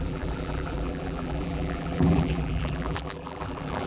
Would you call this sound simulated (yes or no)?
yes